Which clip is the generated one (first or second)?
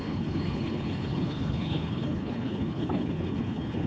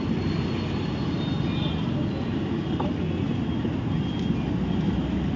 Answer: first